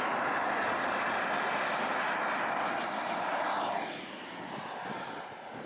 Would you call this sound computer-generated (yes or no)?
no